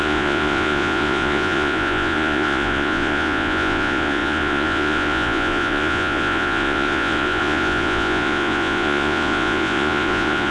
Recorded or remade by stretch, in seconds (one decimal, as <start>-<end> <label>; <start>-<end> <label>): 0.0-10.5 remade